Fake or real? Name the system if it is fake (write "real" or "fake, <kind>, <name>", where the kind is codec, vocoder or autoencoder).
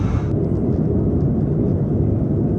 real